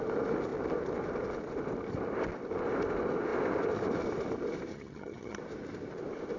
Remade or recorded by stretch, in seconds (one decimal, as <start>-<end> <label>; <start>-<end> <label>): 0.0-4.7 recorded; 4.7-5.4 remade; 5.4-6.4 recorded